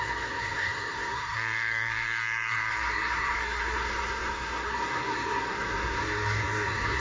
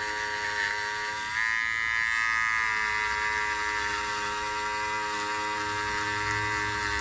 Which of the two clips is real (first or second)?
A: second